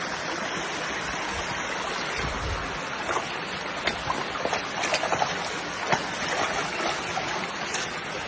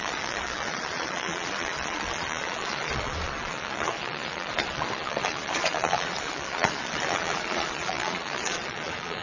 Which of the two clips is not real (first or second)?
second